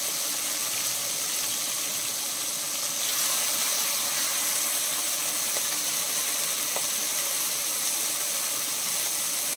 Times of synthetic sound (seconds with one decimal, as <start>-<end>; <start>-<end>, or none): 7.1-7.6